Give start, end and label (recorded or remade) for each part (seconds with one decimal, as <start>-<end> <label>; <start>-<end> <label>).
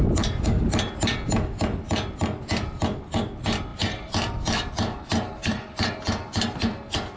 0.0-3.7 recorded; 3.7-4.7 remade; 4.7-5.4 recorded; 5.4-6.0 remade; 6.0-7.2 recorded